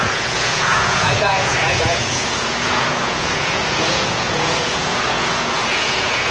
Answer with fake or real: fake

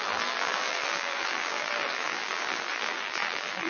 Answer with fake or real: fake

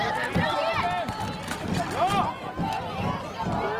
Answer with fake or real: real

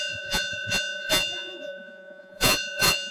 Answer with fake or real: fake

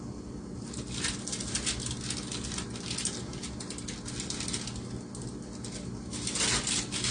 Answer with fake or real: real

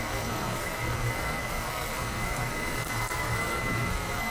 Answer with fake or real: fake